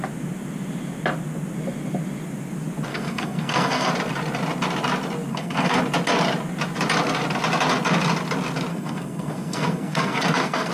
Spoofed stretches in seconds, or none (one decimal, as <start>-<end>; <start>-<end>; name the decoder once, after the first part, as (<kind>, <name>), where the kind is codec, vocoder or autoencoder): 2.9-3.9 (codec, SNAC); 5.3-5.8; 8.7-10.7

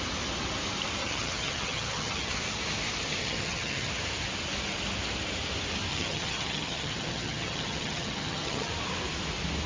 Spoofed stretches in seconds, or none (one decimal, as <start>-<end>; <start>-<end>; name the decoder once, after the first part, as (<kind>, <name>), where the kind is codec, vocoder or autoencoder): 1.0-2.4 (vocoder, HiFi-GAN); 3.2-3.9; 5.9-8.7

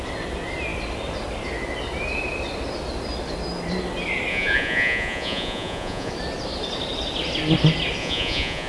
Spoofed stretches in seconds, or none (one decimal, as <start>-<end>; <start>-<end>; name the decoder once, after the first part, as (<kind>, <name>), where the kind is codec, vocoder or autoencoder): 4.3-6.1 (vocoder, Vocos); 8.0-8.7

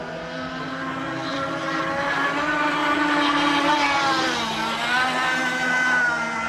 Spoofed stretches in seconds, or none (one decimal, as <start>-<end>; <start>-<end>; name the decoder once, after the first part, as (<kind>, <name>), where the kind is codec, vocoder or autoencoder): 1.3-1.8 (vocoder, BigVGAN v2); 2.8-3.5